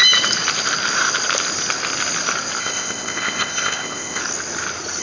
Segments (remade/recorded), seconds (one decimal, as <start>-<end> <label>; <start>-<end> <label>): 0.0-2.6 recorded; 2.6-4.2 remade; 4.2-5.0 recorded